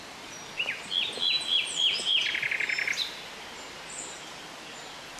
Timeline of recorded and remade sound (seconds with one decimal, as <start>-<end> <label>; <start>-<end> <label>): 0.0-1.8 recorded; 1.8-2.4 remade; 2.4-5.2 recorded